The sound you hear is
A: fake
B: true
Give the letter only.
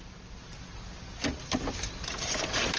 A